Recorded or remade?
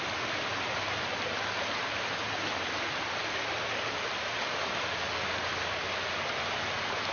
recorded